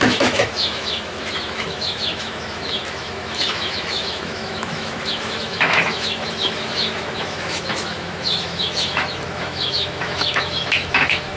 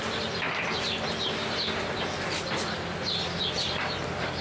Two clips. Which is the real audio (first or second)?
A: second